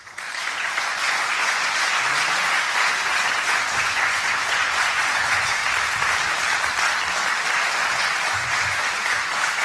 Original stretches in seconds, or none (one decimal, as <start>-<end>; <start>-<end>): 5.6-7.5